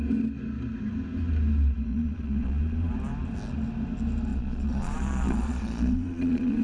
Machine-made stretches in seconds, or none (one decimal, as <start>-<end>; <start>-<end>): 1.9-2.9; 4.3-6.6